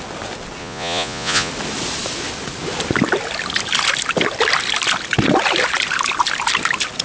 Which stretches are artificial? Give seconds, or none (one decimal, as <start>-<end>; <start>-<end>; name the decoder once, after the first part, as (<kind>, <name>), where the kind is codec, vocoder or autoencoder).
0.6-1.5 (vocoder, Vocos)